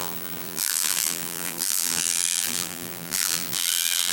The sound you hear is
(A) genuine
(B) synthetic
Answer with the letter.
B